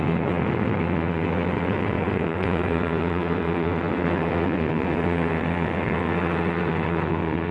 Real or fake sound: fake